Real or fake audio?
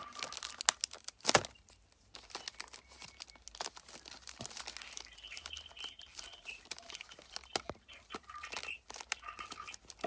real